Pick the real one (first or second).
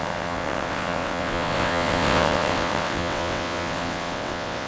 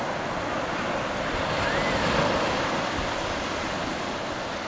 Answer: second